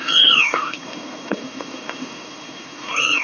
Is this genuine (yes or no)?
no